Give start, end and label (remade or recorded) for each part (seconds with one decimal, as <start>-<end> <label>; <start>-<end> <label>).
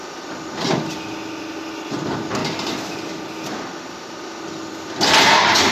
0.0-5.7 recorded